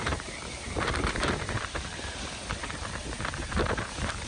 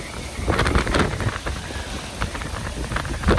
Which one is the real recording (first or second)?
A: second